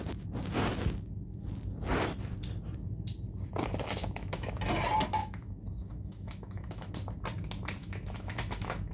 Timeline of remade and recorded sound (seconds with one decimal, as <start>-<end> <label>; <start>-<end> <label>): 0.0-4.0 recorded; 4.0-4.5 remade; 4.5-5.2 recorded; 5.2-6.9 remade; 6.9-7.8 recorded; 7.8-8.9 remade